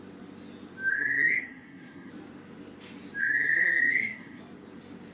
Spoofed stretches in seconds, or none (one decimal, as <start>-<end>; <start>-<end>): 0.9-2.1; 3.2-4.4